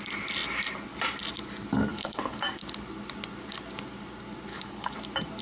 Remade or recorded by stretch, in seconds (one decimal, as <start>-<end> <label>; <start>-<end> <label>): 0.0-1.9 recorded; 1.9-2.4 remade; 2.4-4.5 recorded; 4.5-5.0 remade; 5.0-5.4 recorded